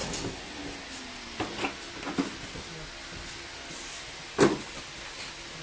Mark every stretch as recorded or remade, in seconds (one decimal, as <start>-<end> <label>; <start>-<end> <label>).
0.0-5.6 recorded